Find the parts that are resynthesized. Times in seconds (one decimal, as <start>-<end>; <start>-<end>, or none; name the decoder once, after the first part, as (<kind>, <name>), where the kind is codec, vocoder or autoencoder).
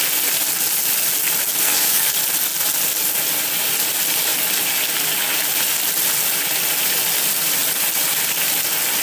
1.6-2.1 (codec, SNAC)